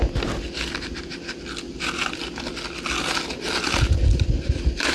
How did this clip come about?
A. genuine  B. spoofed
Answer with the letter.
A